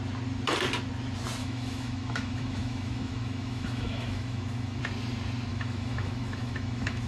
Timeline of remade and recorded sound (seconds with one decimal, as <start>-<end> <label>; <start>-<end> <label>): 0.0-1.4 recorded; 1.4-4.8 remade; 4.8-5.5 recorded; 5.5-7.1 remade

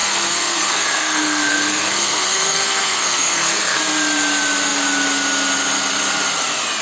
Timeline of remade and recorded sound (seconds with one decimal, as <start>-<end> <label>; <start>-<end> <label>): 0.0-3.8 remade; 3.8-6.8 recorded

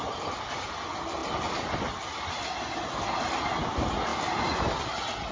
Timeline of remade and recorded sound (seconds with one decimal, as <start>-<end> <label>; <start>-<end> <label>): 0.0-5.3 recorded

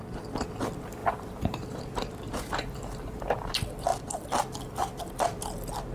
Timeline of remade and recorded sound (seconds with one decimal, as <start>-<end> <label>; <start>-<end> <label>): 0.0-1.0 recorded; 1.0-3.5 remade; 3.5-5.9 recorded

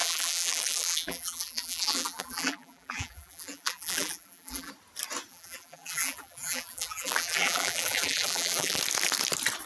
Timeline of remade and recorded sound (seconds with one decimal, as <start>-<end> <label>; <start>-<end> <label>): 0.0-4.7 remade; 4.7-5.3 recorded; 5.3-8.8 remade; 8.8-9.7 recorded

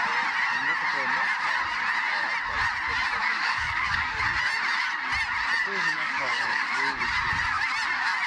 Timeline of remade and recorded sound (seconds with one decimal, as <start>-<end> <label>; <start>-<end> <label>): 0.0-3.2 recorded; 3.2-4.2 remade; 4.2-5.6 recorded; 5.6-7.0 remade; 7.0-8.3 recorded

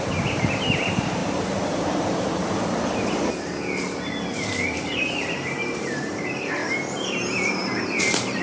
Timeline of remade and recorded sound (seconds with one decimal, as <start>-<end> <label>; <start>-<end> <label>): 0.0-2.4 remade; 2.4-4.8 recorded; 4.8-8.4 remade

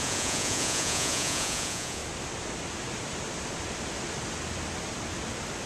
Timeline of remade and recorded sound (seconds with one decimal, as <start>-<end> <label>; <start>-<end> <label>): 0.0-2.0 remade; 2.0-5.7 recorded